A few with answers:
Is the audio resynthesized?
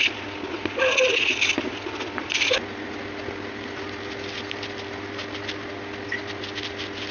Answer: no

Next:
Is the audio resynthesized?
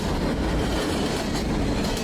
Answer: no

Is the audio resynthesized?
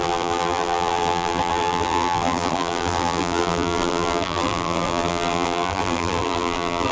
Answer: yes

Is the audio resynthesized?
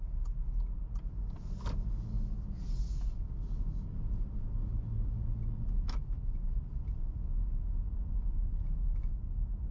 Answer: no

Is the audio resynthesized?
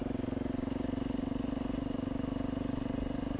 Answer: no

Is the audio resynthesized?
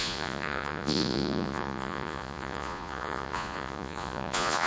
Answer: yes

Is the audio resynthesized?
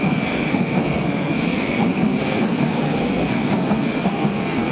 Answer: yes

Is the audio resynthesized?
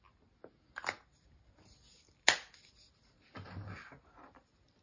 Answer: no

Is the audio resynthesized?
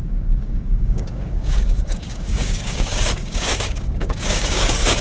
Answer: yes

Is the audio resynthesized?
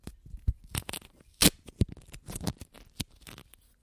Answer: no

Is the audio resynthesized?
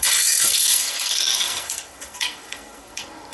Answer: yes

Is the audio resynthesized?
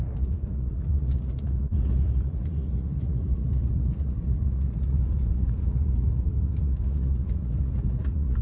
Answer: yes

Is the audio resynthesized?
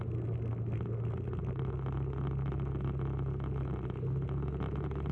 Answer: no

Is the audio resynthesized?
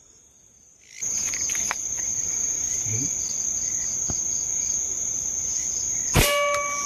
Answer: no